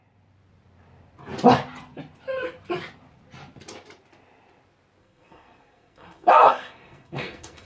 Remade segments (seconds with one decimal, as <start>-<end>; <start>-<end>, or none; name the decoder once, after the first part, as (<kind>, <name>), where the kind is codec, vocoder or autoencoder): 5.0-7.7 (codec, SNAC)